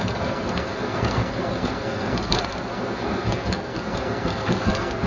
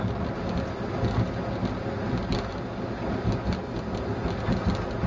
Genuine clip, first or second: second